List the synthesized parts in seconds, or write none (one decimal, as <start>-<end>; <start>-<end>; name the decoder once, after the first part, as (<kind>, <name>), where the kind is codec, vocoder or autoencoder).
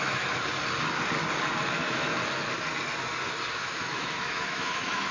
0.0-0.4 (autoencoder, DAC-VAE); 1.7-2.2; 3.5-5.1